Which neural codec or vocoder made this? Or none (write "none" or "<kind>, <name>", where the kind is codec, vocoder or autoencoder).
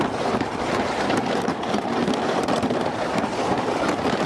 vocoder, BigVGAN v2